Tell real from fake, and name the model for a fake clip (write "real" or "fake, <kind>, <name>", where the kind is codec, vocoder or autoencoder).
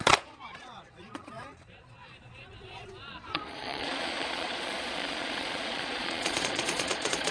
fake, vocoder, Vocos